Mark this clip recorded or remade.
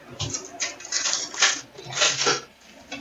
remade